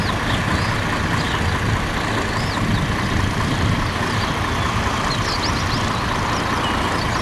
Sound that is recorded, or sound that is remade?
recorded